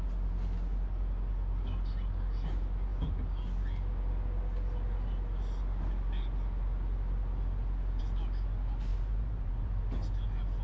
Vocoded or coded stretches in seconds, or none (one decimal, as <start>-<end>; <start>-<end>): 8.9-9.8